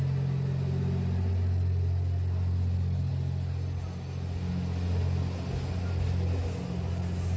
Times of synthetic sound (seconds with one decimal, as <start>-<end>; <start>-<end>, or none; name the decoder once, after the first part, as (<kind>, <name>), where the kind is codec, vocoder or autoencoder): none